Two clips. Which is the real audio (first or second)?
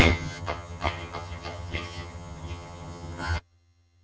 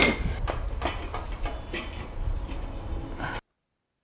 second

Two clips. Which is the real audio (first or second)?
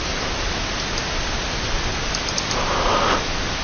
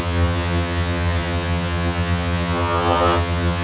first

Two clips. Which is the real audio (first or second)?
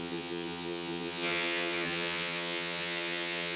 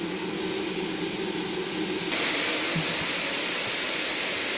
second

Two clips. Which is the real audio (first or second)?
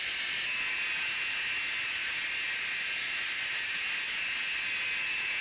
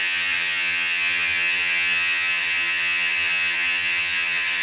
first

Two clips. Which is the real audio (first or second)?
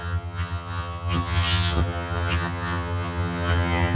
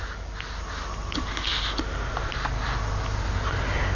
second